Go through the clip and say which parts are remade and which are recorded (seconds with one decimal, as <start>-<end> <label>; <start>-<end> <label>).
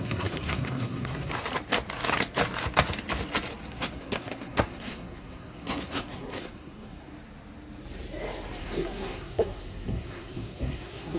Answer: 0.0-1.3 remade; 1.3-3.7 recorded; 3.7-7.1 remade; 7.1-8.6 recorded; 8.6-11.2 remade